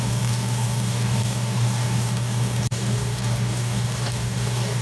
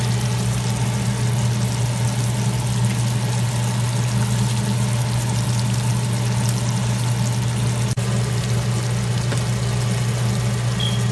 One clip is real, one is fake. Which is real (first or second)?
second